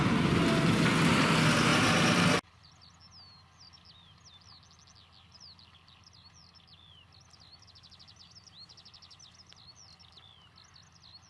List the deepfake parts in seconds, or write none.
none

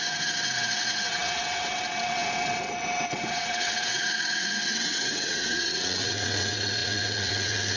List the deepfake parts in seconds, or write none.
0.0-7.8 (vocoder, WaveNeXt)

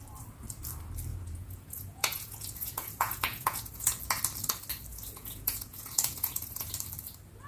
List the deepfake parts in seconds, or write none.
1.1-4.0 (vocoder, Vocos); 4.9-6.7

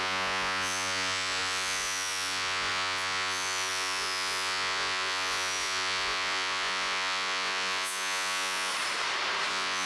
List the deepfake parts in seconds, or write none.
0.0-8.7 (vocoder, Vocos); 9.5-9.9

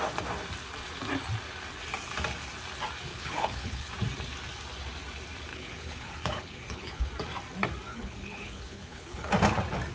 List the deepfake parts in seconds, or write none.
3.1-3.9 (codec, HILCodec); 5.5-7.1; 7.9-9.3

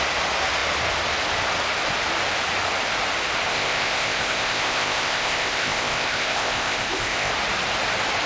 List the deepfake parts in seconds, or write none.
3.5-7.3 (codec, ZipCodec)